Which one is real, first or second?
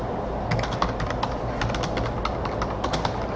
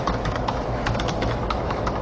first